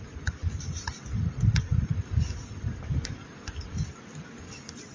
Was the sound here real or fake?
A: real